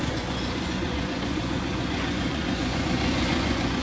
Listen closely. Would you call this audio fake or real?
fake